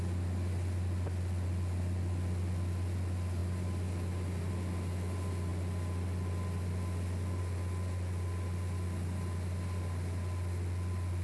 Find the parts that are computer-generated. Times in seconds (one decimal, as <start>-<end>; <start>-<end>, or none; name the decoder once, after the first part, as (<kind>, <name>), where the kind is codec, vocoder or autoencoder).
none